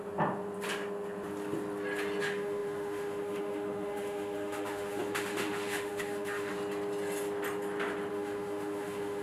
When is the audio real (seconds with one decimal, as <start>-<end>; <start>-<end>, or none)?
0.0-2.2; 6.5-8.1